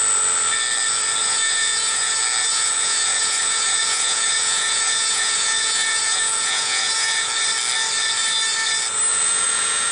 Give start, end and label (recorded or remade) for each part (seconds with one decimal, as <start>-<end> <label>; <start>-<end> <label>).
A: 0.0-1.2 recorded; 1.2-2.1 remade; 2.1-2.5 recorded; 2.5-7.3 remade; 7.3-9.1 recorded; 9.1-9.9 remade